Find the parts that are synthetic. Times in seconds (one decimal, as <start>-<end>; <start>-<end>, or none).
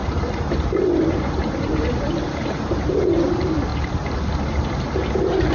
0.0-3.1; 3.7-4.3